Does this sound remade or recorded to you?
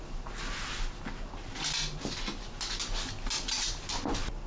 recorded